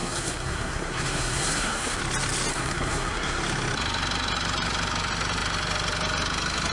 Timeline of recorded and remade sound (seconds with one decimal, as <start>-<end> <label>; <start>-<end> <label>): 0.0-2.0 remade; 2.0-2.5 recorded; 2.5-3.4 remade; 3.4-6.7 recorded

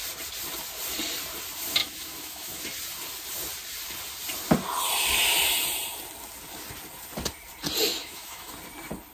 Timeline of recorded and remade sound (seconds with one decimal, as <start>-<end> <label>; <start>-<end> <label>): 0.0-1.8 recorded; 1.8-2.6 remade; 2.6-7.9 recorded; 7.9-8.5 remade; 8.5-9.1 recorded

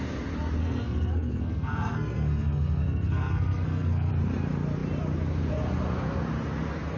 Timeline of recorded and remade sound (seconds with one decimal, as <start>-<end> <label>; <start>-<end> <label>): 0.0-0.6 recorded; 0.6-4.1 remade; 4.1-7.0 recorded

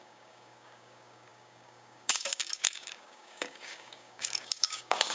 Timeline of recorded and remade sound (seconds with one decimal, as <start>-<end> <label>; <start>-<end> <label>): 0.0-5.1 remade